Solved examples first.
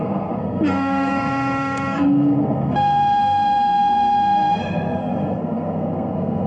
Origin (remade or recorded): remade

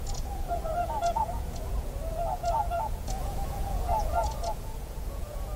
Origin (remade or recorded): remade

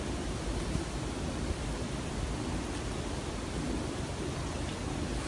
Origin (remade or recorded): recorded